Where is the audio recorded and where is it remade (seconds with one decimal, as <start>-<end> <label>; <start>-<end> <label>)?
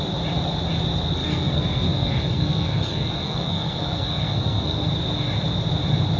0.0-1.2 recorded; 1.2-4.9 remade; 4.9-6.2 recorded